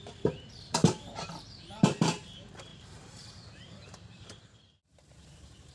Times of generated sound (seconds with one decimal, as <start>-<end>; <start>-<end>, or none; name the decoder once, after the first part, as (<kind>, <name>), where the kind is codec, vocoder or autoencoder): 0.0-5.7 (vocoder, BigVGAN v2)